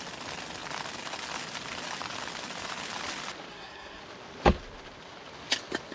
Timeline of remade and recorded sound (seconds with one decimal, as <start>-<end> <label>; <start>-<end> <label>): 0.0-3.5 recorded; 3.5-4.0 remade; 4.0-5.9 recorded